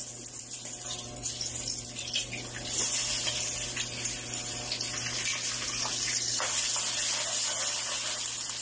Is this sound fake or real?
real